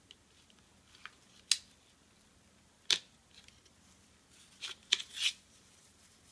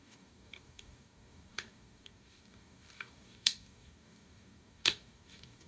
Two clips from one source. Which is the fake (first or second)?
second